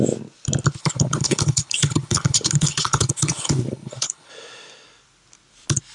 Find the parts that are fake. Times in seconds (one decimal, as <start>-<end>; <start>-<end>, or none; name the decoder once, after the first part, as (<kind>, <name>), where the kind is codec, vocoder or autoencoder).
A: 0.8-4.3 (codec, HILCodec)